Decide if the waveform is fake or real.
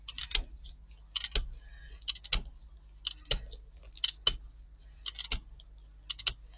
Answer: real